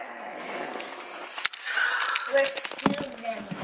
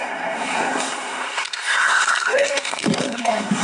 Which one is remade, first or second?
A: second